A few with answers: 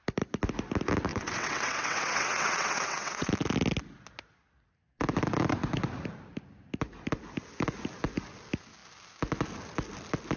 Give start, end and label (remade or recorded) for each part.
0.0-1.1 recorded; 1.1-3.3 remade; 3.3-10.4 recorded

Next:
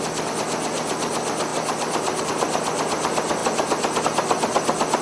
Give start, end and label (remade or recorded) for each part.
0.0-5.0 recorded

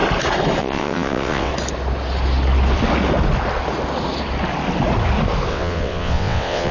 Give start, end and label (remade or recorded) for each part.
0.0-0.6 recorded; 0.6-1.5 remade; 1.5-5.5 recorded; 5.5-6.7 remade

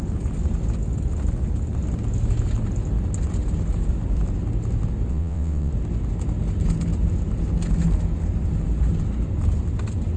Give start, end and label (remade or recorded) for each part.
0.0-5.1 recorded; 5.1-5.7 remade; 5.7-10.2 recorded

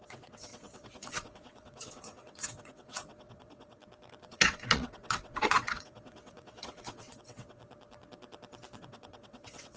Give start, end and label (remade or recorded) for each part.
0.0-3.8 remade; 3.8-4.3 recorded; 4.3-7.6 remade; 7.6-8.8 recorded; 8.8-9.8 remade